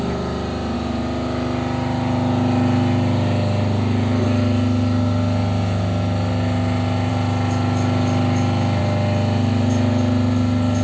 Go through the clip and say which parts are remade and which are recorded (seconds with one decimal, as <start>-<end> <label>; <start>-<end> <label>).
0.0-10.8 recorded